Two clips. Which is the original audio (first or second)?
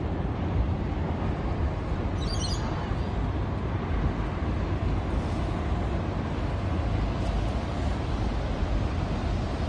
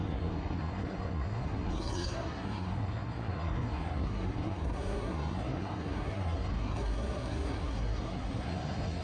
first